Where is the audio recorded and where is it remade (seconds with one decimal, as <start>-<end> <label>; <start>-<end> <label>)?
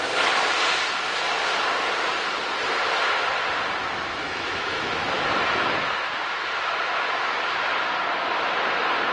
0.0-3.8 recorded; 3.8-4.9 remade; 4.9-9.1 recorded